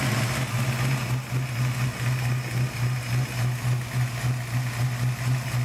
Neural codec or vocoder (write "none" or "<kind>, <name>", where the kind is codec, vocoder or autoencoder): none